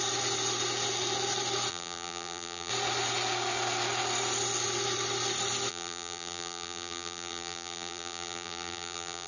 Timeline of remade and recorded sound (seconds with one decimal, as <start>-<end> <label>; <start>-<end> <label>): 0.0-1.7 recorded; 1.7-2.7 remade; 2.7-5.7 recorded; 5.7-9.3 remade